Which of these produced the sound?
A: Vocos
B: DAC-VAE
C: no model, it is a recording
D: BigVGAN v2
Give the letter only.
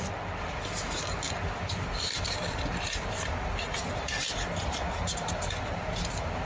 C